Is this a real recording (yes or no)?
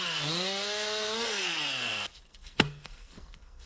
no